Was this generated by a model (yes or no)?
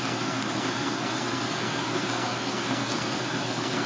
yes